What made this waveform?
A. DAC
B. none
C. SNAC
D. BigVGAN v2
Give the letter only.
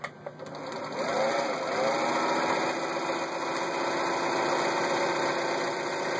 B